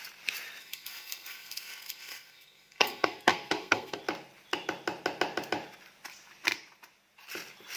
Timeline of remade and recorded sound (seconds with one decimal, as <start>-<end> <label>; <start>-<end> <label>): 0.0-0.6 recorded; 0.6-4.0 remade; 4.0-7.8 recorded